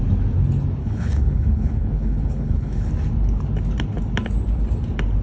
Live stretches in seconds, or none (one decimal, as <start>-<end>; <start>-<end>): 0.0-0.8; 2.9-5.2